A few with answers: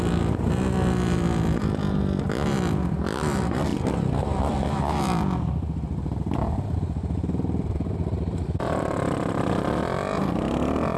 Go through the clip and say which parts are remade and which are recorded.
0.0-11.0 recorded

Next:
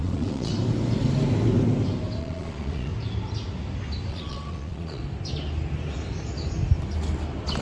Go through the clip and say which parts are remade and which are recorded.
0.0-0.5 remade; 0.5-2.2 recorded; 2.2-2.9 remade; 2.9-4.1 recorded; 4.1-5.0 remade; 5.0-7.6 recorded

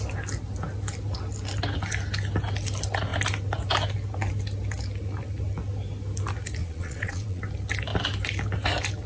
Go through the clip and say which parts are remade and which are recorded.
0.0-6.6 recorded; 6.6-7.4 remade; 7.4-9.1 recorded

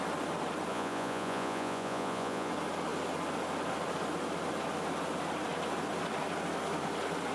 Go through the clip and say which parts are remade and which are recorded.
0.0-0.7 recorded; 0.7-2.5 remade; 2.5-7.3 recorded

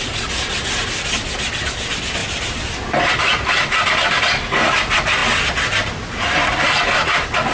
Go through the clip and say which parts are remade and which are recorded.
0.0-7.5 recorded

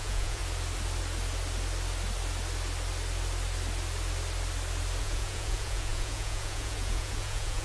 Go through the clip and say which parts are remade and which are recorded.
0.0-0.4 remade; 0.4-5.0 recorded; 5.0-7.6 remade